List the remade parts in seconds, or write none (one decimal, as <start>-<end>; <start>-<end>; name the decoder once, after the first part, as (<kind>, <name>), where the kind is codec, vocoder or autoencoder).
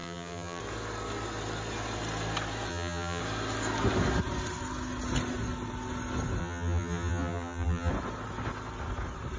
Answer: 0.0-0.6 (vocoder, BigVGAN v2); 2.7-3.2; 6.4-7.9